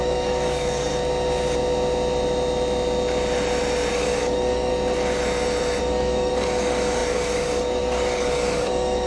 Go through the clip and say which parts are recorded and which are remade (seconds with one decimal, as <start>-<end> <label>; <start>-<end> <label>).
0.0-0.9 remade; 0.9-3.9 recorded; 3.9-4.7 remade; 4.7-5.8 recorded; 5.8-9.1 remade